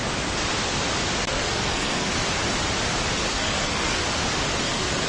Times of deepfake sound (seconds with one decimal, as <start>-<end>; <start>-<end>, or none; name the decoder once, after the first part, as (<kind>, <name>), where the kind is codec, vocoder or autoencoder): 1.3-2.1 (codec, SNAC); 3.3-4.0; 4.6-5.1